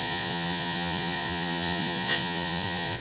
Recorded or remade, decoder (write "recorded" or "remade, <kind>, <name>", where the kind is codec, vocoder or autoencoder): remade, vocoder, Vocos